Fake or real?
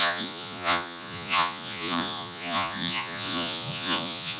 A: fake